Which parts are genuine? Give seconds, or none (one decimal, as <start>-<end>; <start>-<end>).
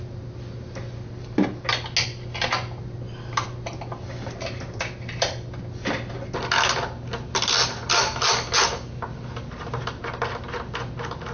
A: 0.0-11.3